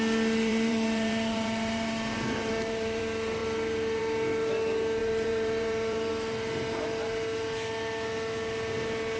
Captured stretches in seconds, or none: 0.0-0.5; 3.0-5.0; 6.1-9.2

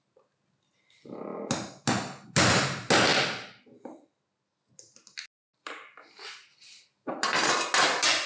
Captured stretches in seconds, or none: 0.0-8.3

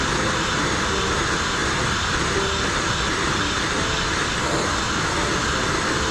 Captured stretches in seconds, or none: 0.0-6.1

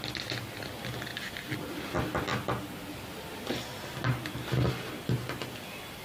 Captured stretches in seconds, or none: 0.0-6.0

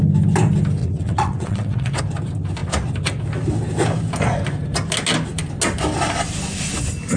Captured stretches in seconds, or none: 0.0-0.8; 2.0-7.2

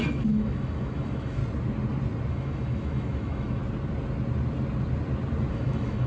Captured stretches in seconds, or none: 1.4-2.3; 3.6-5.5